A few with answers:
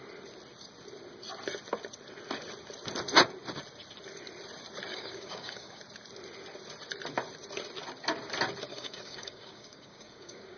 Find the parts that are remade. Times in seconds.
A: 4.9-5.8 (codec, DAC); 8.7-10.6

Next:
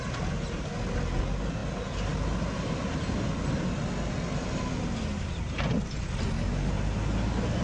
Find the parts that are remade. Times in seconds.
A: none

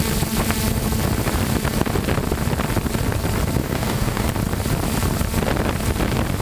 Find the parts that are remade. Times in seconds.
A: 3.6-4.3 (codec, DAC)

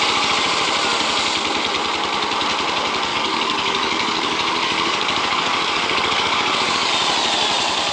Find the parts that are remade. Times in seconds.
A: 3.1-6.9 (codec, DAC)

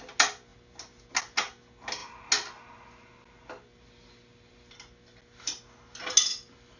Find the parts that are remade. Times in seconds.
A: none

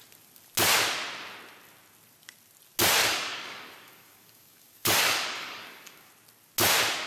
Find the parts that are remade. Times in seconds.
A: 3.0-6.1 (codec, DAC)